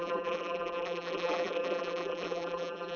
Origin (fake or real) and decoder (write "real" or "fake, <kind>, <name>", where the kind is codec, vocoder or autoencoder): fake, vocoder, BigVGAN v2